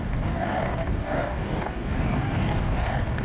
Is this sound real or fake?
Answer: fake